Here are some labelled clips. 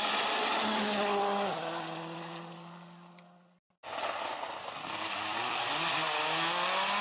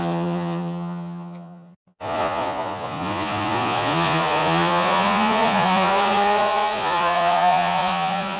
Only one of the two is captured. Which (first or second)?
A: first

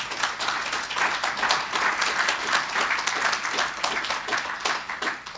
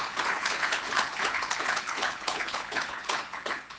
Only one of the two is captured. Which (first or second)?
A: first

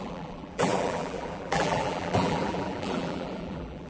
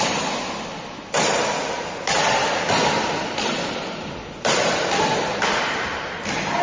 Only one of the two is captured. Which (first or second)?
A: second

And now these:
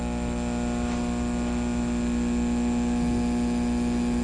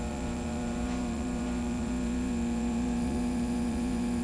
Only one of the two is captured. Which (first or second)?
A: first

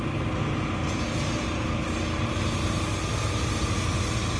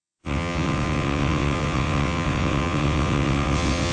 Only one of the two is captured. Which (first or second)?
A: first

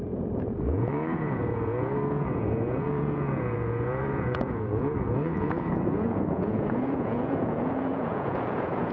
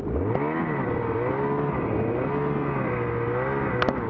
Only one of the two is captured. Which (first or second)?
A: second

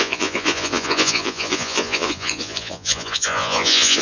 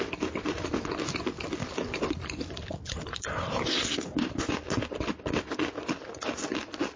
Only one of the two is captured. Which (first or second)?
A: second